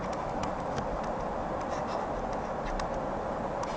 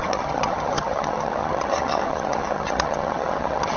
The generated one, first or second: second